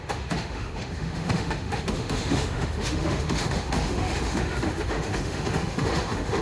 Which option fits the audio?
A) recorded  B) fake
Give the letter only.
B